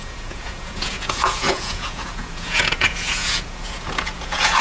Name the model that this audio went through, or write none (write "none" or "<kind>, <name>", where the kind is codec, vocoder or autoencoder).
vocoder, Vocos